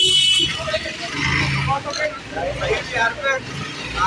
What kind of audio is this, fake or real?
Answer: real